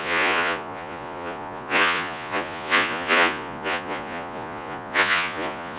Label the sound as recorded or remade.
remade